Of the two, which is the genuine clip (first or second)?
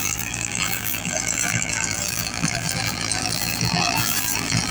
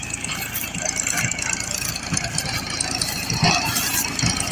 second